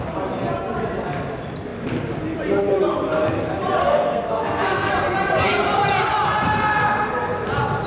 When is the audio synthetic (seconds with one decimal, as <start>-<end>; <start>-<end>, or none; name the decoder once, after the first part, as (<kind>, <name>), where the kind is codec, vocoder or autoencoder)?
3.8-4.9 (codec, SNAC)